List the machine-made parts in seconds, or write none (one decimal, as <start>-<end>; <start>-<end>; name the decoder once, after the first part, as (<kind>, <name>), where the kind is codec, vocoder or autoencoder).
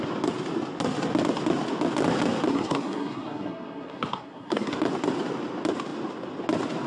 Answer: 2.5-4.7 (codec, SNAC)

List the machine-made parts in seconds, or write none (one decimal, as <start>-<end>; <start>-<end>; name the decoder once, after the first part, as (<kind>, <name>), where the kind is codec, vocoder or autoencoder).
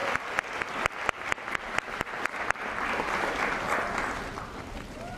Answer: none